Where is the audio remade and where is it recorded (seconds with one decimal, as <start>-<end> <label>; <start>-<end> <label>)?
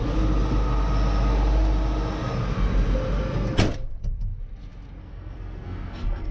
0.0-5.0 recorded; 5.0-6.3 remade